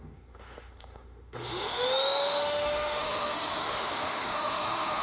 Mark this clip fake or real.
fake